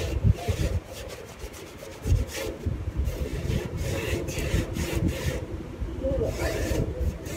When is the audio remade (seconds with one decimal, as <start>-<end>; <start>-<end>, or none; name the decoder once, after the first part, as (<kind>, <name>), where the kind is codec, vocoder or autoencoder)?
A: 0.0-1.9 (vocoder, BigVGAN v2); 2.6-7.4